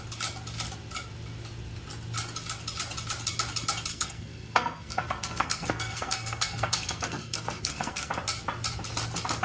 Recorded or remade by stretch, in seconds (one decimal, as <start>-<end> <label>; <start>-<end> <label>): 0.0-3.9 recorded; 3.9-8.1 remade; 8.1-9.4 recorded